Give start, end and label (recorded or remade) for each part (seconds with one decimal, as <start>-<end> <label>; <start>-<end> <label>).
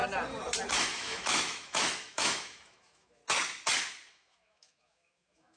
0.0-0.7 recorded; 0.7-3.2 remade; 3.2-4.1 recorded; 4.1-5.6 remade